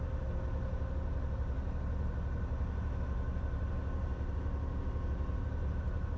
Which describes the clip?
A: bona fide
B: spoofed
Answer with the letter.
A